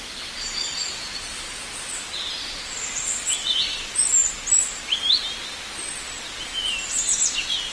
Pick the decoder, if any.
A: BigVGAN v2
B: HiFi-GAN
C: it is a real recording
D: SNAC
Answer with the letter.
C